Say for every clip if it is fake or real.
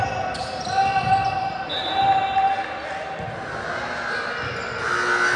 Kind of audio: real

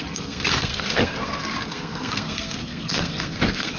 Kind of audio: fake